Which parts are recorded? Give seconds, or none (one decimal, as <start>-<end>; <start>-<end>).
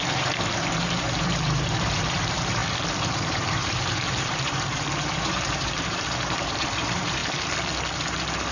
2.6-3.1; 7.2-8.5